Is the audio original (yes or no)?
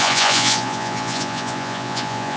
no